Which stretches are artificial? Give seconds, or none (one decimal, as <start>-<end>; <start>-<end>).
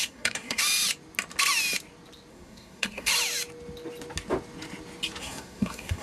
0.0-0.6; 2.3-3.1; 5.2-6.0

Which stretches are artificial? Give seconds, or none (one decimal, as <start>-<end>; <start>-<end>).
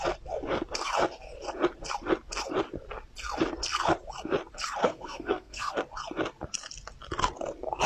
4.8-5.8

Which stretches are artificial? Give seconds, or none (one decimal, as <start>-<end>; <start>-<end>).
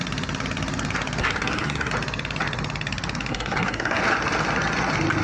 1.2-1.9; 3.3-4.0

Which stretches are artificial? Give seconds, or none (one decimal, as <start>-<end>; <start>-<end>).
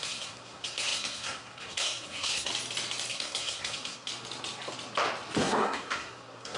0.0-2.5; 3.1-4.1; 5.4-6.6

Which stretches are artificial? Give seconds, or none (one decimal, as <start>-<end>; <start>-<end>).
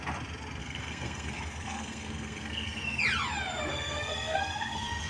0.6-3.0; 3.7-5.1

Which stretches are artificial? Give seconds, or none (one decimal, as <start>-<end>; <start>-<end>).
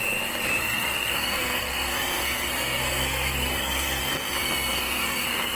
0.6-4.0; 4.4-5.6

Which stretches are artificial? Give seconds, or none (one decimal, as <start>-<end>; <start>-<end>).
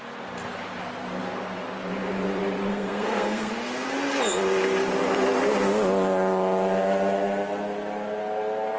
2.7-3.5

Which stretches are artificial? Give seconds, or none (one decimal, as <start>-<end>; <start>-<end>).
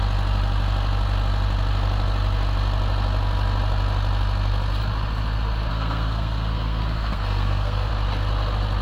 5.7-7.9